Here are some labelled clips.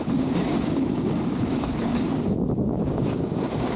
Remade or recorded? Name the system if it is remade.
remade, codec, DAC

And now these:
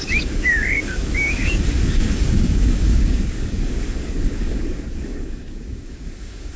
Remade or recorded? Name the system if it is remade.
remade, codec, DAC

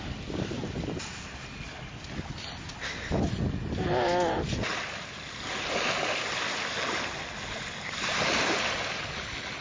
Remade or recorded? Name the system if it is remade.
recorded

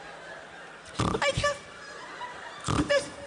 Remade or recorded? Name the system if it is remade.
remade, vocoder, BigVGAN v2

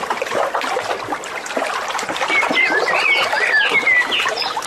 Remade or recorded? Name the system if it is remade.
recorded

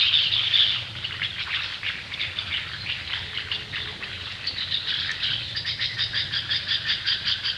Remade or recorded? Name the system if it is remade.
recorded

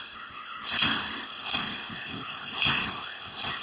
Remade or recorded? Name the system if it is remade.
remade, codec, ZipCodec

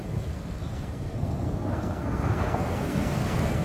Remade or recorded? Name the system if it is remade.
remade, codec, SNAC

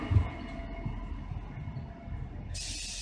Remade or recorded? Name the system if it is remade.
recorded